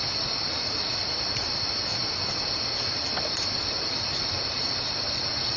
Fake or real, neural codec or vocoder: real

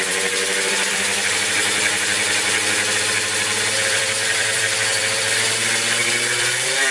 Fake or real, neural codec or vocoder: fake, vocoder, BigVGAN v2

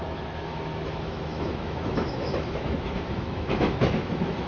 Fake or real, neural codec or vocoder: fake, autoencoder, DAC-VAE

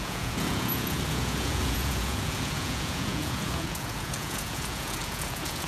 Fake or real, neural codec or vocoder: fake, vocoder, Vocos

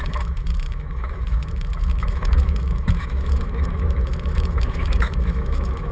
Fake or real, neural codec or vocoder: fake, autoencoder, DAC-VAE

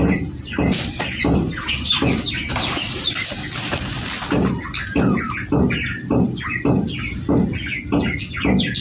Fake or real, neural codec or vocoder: real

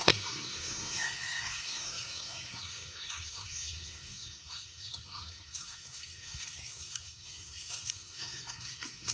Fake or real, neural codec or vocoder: fake, codec, SNAC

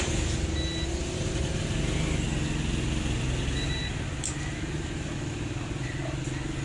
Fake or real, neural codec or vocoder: real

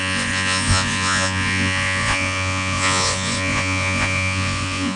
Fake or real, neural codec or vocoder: fake, vocoder, Vocos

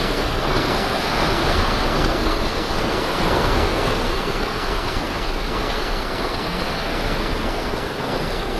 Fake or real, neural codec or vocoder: fake, codec, SNAC